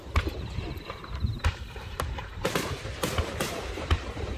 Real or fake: fake